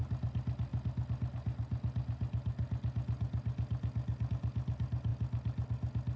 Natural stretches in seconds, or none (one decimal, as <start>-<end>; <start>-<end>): 0.0-6.2